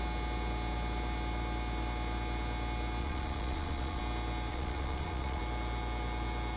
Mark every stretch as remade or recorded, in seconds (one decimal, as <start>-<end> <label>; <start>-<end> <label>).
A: 0.0-3.0 recorded; 3.0-4.0 remade; 4.0-4.5 recorded; 4.5-5.4 remade; 5.4-6.6 recorded